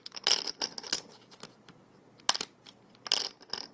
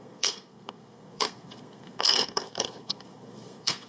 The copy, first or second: second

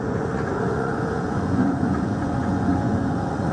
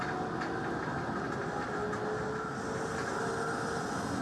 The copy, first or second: first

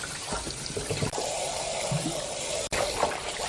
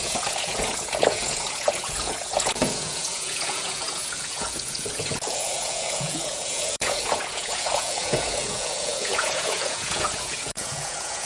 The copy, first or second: second